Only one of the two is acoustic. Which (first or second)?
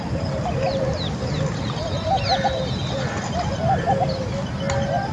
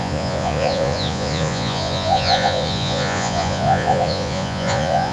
first